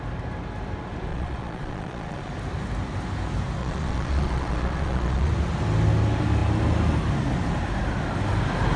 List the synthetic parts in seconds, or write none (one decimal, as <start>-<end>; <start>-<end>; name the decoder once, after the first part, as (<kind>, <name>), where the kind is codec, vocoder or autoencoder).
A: 1.1-2.3 (vocoder, Vocos); 3.6-5.3